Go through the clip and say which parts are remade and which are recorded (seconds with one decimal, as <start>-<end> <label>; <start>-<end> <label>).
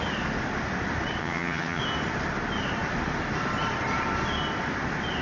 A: 0.0-1.2 recorded; 1.2-1.8 remade; 1.8-5.2 recorded